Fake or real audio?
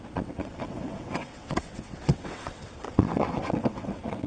fake